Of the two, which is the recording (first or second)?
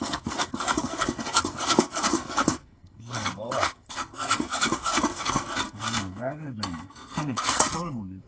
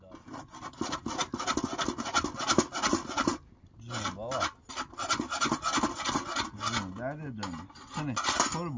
second